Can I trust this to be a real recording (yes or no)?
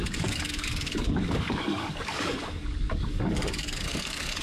no